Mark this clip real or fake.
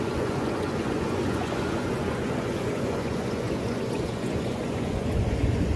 fake